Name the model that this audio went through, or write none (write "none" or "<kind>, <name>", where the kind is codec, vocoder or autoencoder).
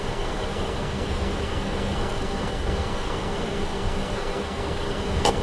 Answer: codec, SNAC